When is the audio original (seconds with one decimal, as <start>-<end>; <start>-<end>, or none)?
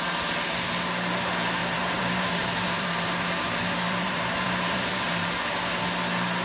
0.0-1.6; 5.3-6.4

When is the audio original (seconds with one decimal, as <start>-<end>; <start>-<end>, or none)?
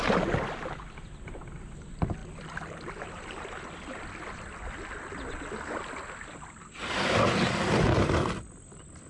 0.0-2.2; 4.4-9.1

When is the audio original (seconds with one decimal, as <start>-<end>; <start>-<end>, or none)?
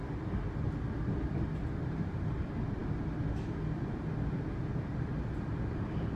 0.0-6.2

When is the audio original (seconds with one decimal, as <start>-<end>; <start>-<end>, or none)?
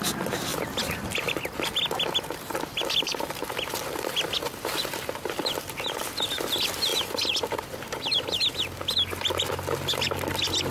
0.0-0.5; 1.3-2.7; 5.1-6.9; 8.4-10.7